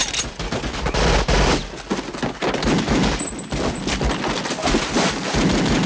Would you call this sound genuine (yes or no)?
yes